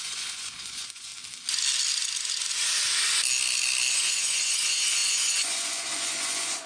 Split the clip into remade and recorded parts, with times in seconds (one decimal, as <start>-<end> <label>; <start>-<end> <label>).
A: 0.0-1.1 remade; 1.1-3.9 recorded; 3.9-6.7 remade